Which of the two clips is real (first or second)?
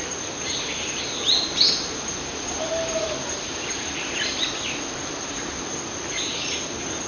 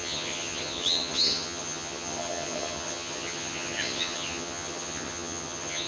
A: first